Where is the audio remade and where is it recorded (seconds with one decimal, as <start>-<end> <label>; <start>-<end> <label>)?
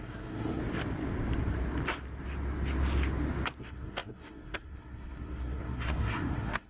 0.0-0.6 remade; 0.6-3.6 recorded; 3.6-6.7 remade